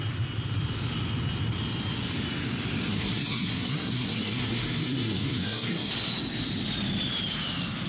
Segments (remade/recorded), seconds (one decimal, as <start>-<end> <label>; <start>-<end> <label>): 0.0-2.9 recorded; 2.9-5.9 remade; 5.9-7.9 recorded

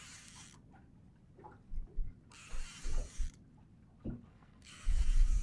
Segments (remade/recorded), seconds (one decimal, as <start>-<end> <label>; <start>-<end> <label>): 0.0-4.3 recorded; 4.3-5.0 remade; 5.0-5.4 recorded

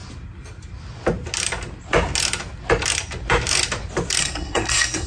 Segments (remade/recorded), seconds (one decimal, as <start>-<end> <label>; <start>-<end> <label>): 0.0-4.2 recorded; 4.2-5.1 remade

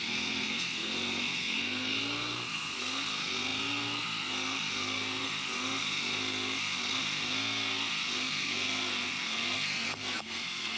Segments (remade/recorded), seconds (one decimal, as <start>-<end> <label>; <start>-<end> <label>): 0.0-10.8 remade